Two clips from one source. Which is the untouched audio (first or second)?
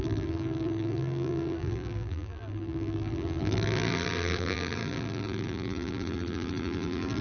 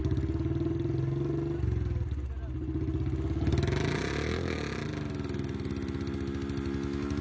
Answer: second